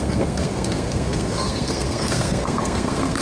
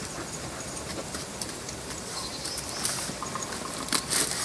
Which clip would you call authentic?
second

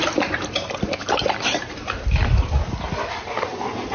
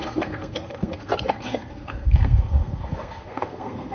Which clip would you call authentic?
first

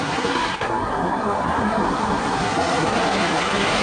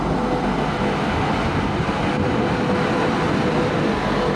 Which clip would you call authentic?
second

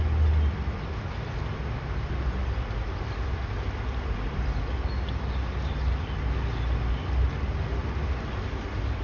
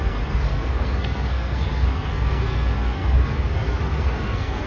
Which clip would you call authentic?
first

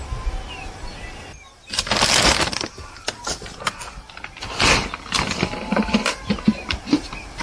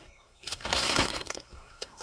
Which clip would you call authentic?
first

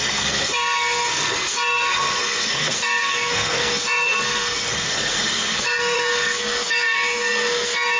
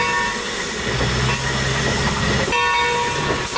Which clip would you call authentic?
second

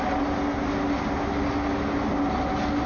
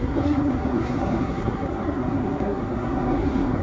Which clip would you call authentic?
first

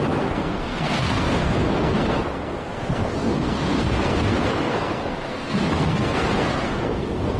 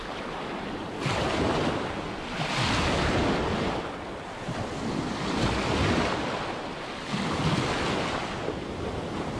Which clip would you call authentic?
second